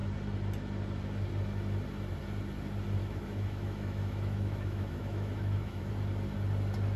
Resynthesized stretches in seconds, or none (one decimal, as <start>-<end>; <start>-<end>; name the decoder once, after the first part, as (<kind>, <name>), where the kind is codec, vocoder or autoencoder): 3.0-5.9 (autoencoder, DAC-VAE)